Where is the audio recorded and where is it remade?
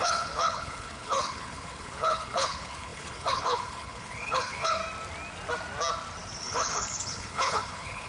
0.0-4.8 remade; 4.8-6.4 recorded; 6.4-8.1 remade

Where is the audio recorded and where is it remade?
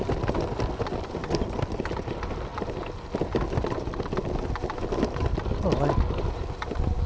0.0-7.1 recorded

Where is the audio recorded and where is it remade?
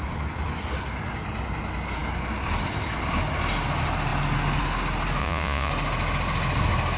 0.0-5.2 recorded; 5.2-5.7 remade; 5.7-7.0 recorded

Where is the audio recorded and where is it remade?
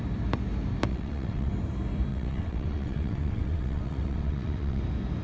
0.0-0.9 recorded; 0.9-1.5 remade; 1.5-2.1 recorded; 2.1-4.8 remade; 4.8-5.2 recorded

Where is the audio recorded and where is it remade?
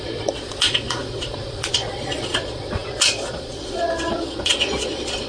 0.0-5.3 remade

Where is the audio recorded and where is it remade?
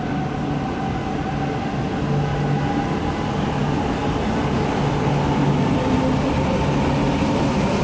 0.0-7.8 recorded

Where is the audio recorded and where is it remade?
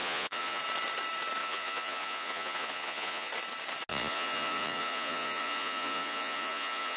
0.0-0.6 remade; 0.6-1.4 recorded; 1.4-3.3 remade; 3.3-3.9 recorded; 3.9-7.0 remade